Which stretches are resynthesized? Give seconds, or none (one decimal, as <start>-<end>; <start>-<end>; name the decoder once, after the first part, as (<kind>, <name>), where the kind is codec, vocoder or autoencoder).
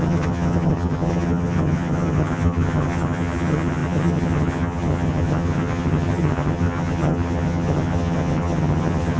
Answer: 0.0-9.2 (vocoder, HiFi-GAN)